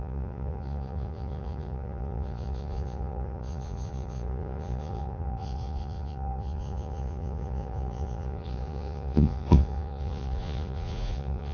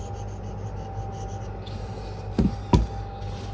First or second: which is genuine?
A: second